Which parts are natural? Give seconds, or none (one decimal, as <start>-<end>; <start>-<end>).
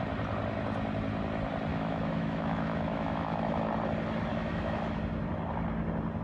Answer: 0.0-1.7; 3.7-4.3; 5.0-6.2